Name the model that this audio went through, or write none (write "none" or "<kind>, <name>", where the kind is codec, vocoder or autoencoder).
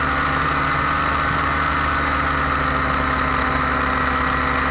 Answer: none